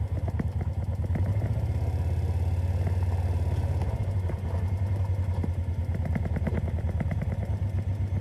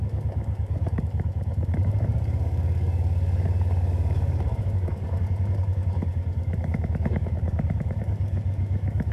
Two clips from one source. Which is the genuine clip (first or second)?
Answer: first